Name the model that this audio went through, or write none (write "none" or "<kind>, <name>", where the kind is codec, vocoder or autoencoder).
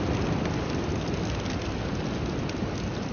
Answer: none